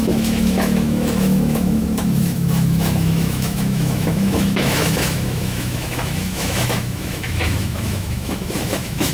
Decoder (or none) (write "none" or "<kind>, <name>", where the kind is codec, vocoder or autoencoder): autoencoder, DAC-VAE